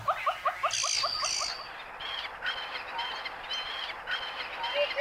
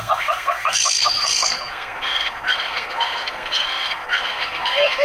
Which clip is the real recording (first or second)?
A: first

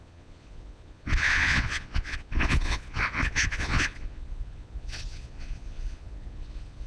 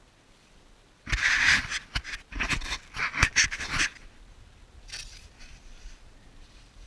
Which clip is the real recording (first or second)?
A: second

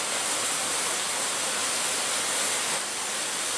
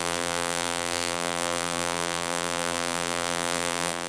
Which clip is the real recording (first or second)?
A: first